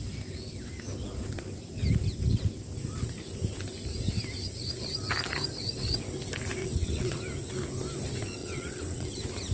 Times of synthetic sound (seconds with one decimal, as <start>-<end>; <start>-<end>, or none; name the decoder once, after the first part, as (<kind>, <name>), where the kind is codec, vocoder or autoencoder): 6.6-7.2 (vocoder, WaveNeXt); 8.4-9.1

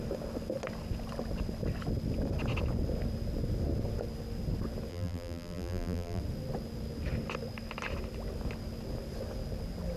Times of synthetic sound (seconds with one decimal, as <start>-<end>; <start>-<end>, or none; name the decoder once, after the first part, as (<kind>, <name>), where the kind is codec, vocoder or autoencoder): 4.9-6.2 (vocoder, BigVGAN v2)

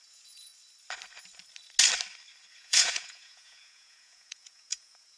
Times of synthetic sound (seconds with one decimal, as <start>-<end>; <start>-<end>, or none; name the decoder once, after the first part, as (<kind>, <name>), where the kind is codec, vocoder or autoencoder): 0.0-0.5 (vocoder, Vocos); 2.5-5.2

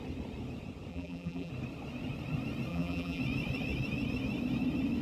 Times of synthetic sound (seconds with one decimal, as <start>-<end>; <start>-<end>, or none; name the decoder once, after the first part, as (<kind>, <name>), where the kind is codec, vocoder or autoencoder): 0.9-1.5 (vocoder, BigVGAN v2); 2.7-3.2

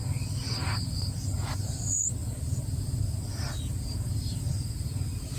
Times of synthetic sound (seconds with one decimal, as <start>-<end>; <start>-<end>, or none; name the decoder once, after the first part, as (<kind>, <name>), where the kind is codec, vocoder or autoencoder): none

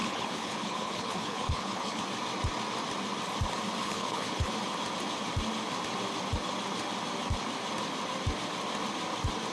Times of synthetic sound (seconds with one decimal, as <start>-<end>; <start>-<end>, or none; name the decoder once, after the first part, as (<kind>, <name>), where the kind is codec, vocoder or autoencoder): 0.0-2.0 (codec, HILCodec); 3.8-4.5

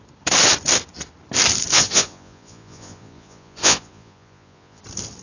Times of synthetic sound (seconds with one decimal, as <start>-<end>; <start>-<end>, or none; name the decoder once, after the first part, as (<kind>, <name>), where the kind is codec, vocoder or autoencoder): 1.7-4.8 (vocoder, Vocos)

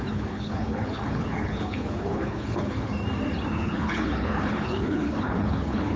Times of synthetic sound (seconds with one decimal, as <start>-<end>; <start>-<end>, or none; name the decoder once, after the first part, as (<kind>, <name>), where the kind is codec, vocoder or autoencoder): 0.0-2.9 (codec, HILCodec); 3.5-6.0